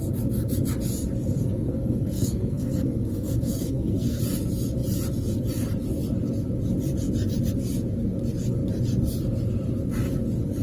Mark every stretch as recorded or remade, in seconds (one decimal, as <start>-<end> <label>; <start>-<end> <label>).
0.0-1.3 recorded; 1.3-4.2 remade; 4.2-10.6 recorded